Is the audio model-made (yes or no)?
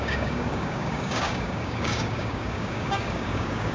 yes